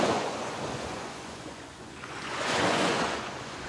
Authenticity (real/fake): fake